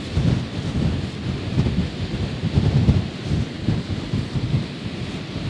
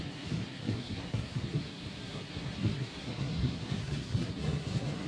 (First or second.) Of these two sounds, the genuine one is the first